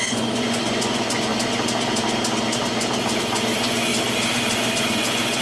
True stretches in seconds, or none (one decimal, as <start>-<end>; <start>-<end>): 1.3-3.2; 3.9-4.7